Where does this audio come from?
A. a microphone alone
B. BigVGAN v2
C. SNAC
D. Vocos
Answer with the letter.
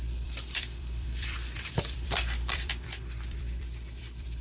B